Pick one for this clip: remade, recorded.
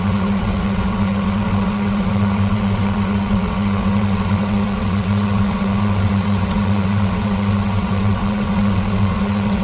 remade